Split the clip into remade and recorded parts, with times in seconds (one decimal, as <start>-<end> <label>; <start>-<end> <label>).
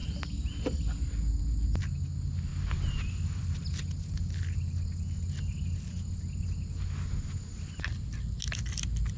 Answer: 0.0-9.2 recorded